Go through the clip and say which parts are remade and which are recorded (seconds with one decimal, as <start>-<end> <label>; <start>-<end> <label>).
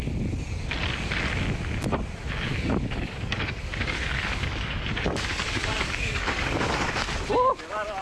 0.0-2.2 recorded; 2.2-6.9 remade; 6.9-8.0 recorded